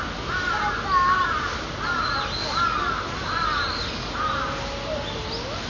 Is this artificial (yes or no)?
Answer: no